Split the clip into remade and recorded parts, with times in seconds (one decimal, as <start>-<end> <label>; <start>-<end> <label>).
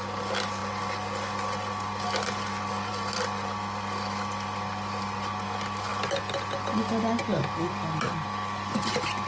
0.0-9.3 recorded